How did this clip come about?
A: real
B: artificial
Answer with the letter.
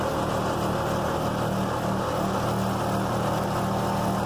A